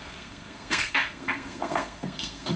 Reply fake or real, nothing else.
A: fake